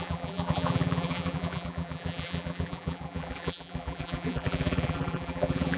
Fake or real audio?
fake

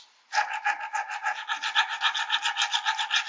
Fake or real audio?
real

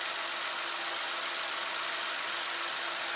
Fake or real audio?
real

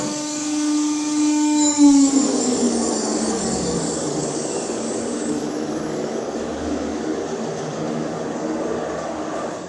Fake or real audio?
fake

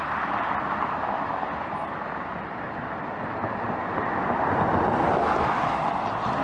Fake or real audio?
real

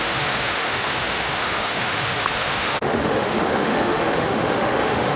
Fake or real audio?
fake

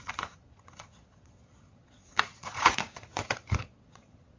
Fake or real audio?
fake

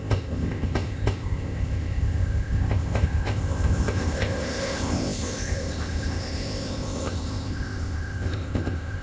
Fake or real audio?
fake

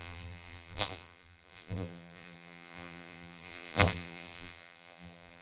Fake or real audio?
fake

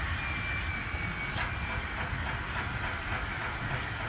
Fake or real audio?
real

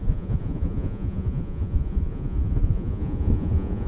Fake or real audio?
fake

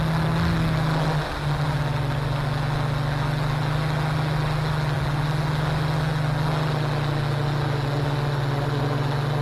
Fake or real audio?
real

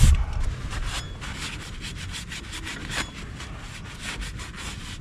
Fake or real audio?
real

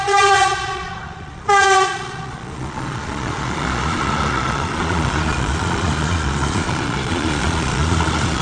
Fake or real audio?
fake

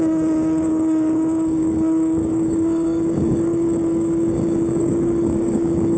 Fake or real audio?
fake